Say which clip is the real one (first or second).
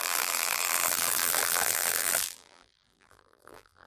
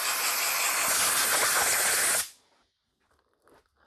second